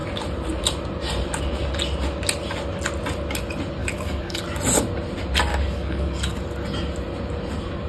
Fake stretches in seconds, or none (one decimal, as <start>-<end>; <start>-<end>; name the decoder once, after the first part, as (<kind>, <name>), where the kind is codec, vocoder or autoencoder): 3.8-4.4 (codec, DAC); 5.5-6.4